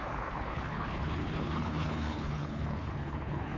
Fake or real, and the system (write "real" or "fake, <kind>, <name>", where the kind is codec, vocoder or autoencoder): fake, codec, HILCodec